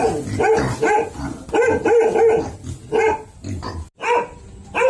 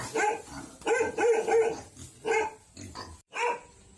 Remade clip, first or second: second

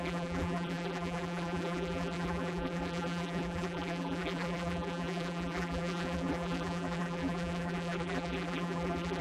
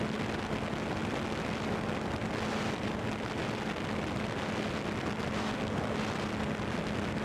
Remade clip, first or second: first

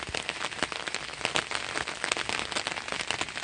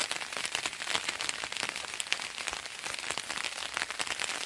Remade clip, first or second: second